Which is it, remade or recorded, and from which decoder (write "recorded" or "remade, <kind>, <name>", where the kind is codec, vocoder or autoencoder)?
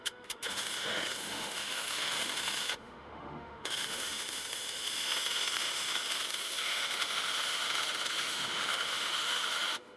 remade, autoencoder, DAC-VAE